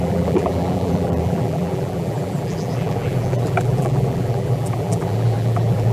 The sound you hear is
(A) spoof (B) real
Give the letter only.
A